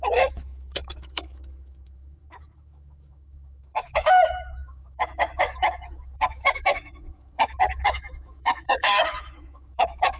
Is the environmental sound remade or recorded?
remade